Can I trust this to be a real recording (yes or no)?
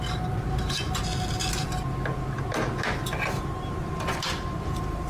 yes